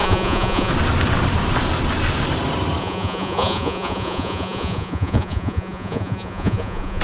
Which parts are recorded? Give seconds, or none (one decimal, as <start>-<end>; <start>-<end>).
0.7-2.8